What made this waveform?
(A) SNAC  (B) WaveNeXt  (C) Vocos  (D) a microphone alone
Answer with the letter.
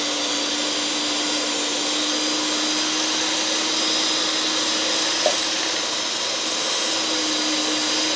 D